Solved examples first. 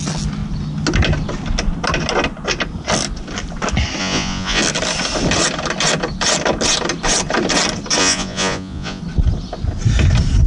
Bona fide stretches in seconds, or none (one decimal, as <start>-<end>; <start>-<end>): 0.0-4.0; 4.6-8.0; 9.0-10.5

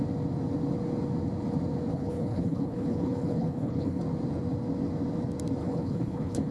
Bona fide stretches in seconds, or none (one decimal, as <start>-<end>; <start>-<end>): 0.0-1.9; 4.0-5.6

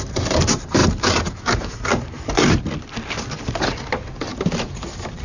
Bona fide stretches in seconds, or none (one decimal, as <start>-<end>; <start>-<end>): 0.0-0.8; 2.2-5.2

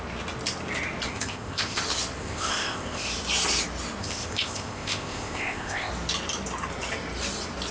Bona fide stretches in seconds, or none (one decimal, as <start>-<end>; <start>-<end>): 0.0-1.1; 1.8-2.2; 3.1-4.0; 5.9-7.7

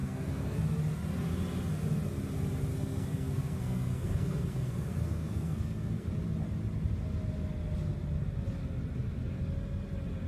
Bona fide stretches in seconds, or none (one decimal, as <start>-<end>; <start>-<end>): 0.6-2.7; 6.1-10.3

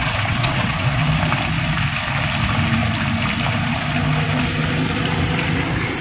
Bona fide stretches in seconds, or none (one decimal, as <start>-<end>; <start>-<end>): 1.1-6.0

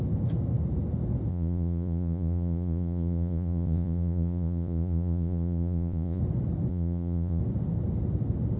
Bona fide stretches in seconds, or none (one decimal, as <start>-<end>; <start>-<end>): 0.0-1.3; 6.2-6.7; 7.4-8.6